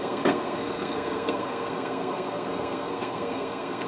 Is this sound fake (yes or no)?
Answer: yes